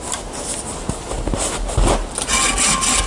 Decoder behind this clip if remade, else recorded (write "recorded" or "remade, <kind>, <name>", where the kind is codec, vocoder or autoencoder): recorded